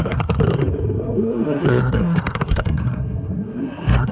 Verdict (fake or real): fake